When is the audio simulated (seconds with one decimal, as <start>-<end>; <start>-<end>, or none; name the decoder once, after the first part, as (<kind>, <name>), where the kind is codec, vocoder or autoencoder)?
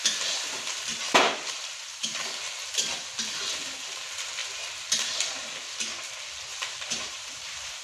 6.5-7.8 (vocoder, BigVGAN v2)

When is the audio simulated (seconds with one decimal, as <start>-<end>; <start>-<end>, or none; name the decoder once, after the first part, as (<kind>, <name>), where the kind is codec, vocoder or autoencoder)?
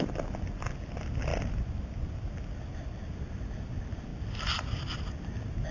none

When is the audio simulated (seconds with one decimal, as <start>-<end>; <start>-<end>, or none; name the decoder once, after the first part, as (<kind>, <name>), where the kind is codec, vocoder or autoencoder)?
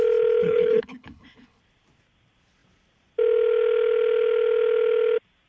0.4-1.6 (codec, HILCodec)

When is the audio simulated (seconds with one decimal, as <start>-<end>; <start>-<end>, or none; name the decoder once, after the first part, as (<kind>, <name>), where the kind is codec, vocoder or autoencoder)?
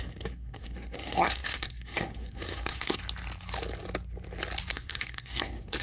0.0-3.0 (codec, SNAC); 4.7-5.8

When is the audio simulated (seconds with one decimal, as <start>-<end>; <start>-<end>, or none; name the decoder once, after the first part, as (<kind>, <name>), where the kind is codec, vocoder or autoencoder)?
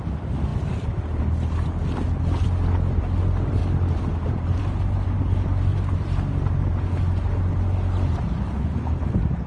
none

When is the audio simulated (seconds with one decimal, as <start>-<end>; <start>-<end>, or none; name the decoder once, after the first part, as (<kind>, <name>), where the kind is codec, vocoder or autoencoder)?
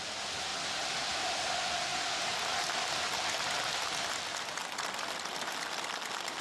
none